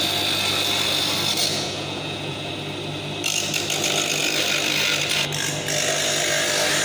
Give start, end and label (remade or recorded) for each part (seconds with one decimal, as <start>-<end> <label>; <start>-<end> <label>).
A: 0.0-1.5 recorded; 1.5-2.5 remade; 2.5-6.8 recorded